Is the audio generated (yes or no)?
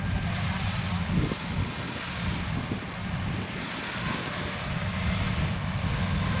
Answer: no